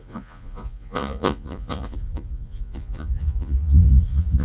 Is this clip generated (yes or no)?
yes